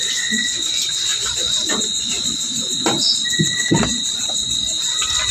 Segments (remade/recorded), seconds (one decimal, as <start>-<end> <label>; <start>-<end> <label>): 0.0-5.3 recorded